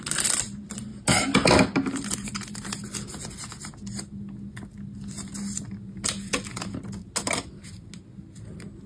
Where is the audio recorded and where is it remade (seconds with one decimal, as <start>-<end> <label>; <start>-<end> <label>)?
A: 0.0-8.9 recorded